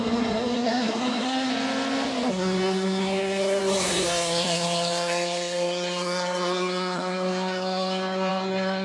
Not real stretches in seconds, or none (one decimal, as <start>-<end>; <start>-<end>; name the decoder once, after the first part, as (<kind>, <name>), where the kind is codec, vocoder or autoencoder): 0.0-1.5 (codec, SNAC); 2.3-8.8

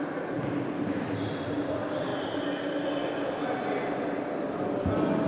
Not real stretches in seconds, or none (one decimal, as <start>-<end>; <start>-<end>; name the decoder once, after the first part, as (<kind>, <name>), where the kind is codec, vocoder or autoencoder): none

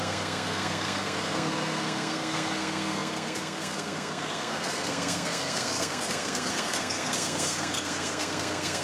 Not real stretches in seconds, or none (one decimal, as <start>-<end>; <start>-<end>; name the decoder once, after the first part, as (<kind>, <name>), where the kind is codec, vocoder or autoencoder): 0.0-8.8 (codec, SNAC)

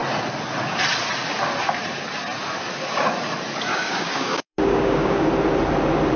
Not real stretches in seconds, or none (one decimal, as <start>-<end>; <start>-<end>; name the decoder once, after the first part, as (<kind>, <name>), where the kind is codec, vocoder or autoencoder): 3.7-5.3 (codec, DAC)

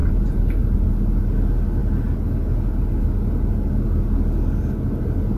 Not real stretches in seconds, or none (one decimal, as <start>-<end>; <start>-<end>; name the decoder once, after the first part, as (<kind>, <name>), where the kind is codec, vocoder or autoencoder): 0.0-0.6 (vocoder, BigVGAN v2)

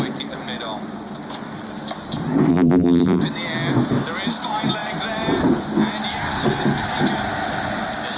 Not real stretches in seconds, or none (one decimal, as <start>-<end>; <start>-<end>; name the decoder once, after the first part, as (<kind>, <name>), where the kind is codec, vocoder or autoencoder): 2.5-3.2 (vocoder, BigVGAN v2)